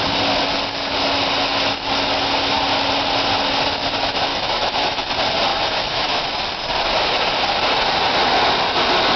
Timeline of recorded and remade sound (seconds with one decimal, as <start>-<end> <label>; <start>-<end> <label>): 0.0-4.3 recorded; 4.3-5.0 remade; 5.0-5.5 recorded; 5.5-6.2 remade; 6.2-9.2 recorded